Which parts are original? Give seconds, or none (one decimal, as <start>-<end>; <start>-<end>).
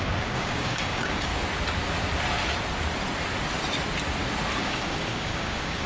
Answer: 1.3-4.6